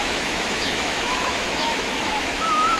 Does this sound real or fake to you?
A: fake